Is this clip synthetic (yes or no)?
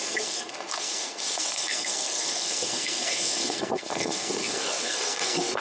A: yes